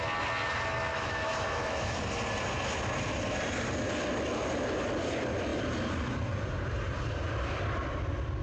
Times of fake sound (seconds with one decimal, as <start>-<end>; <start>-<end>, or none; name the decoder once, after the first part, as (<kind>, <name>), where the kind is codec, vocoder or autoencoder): 0.9-2.0 (autoencoder, DAC-VAE)